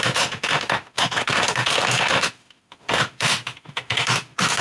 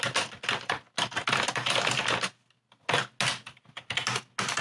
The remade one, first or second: first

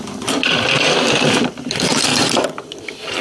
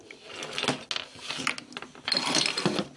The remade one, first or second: first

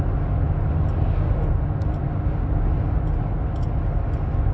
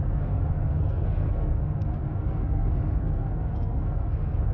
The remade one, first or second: second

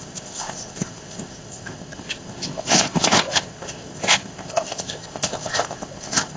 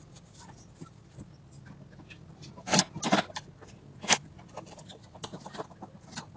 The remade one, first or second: first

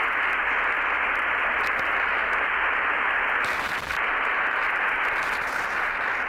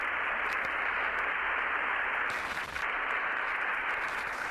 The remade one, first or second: second